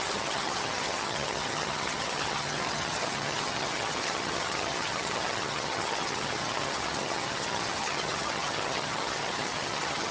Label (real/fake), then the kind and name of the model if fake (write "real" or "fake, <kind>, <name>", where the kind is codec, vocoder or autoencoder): fake, vocoder, HiFi-GAN